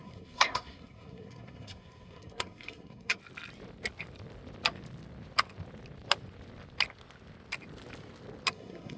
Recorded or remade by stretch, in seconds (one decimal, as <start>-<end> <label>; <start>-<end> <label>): 0.0-3.2 remade; 3.2-8.5 recorded; 8.5-9.0 remade